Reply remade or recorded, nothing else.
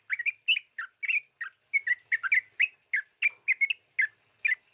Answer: recorded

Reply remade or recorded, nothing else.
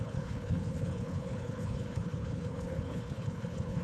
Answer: remade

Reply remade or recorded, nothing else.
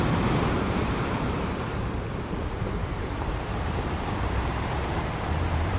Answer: remade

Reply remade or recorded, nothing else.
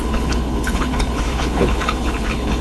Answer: remade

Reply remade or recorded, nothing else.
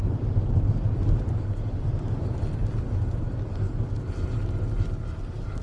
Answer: recorded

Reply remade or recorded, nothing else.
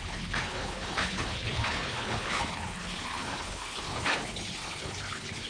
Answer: remade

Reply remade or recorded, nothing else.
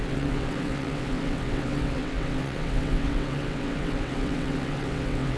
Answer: remade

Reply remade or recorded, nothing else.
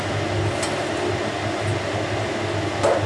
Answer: recorded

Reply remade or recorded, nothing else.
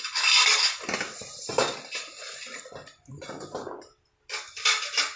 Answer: recorded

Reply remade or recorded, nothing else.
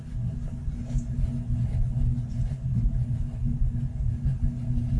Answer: recorded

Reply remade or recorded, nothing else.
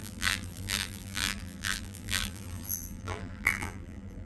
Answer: remade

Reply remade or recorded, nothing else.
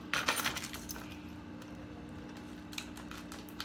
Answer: recorded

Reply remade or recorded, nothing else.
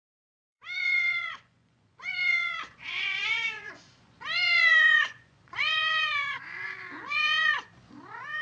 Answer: remade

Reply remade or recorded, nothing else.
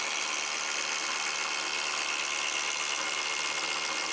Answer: recorded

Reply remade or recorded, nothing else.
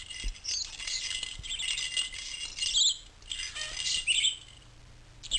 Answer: recorded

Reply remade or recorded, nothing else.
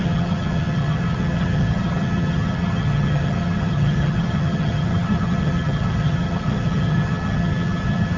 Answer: remade